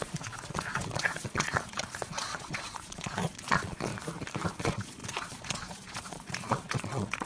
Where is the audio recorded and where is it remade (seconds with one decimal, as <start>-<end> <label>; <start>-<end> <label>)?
0.0-3.9 remade; 3.9-4.5 recorded; 4.5-7.2 remade